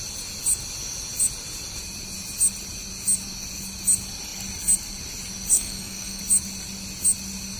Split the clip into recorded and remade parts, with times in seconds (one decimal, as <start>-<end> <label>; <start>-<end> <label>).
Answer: 0.0-5.5 recorded; 5.5-6.2 remade; 6.2-7.6 recorded